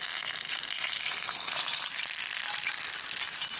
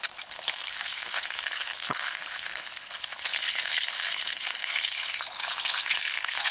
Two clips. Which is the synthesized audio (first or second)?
second